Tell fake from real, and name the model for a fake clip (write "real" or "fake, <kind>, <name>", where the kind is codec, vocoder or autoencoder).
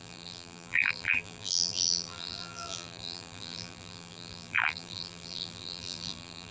fake, vocoder, BigVGAN v2